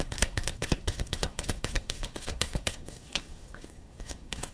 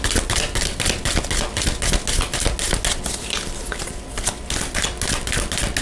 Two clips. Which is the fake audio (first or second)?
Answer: first